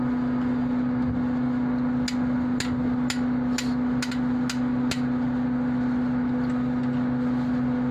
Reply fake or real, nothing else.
real